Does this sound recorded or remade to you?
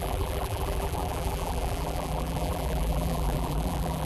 remade